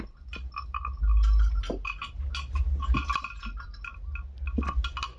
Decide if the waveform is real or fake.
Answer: real